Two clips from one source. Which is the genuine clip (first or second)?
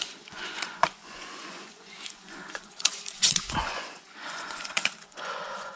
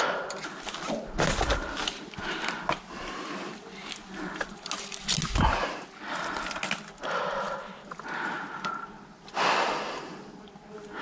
second